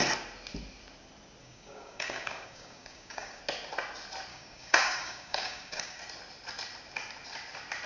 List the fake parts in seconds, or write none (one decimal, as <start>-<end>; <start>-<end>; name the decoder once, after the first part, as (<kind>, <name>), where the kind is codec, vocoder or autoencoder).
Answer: 1.4-3.4 (codec, DAC); 4.3-6.0